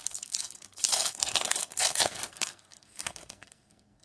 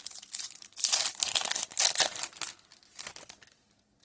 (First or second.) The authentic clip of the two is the second